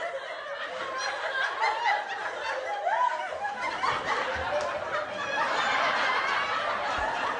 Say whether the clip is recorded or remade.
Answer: recorded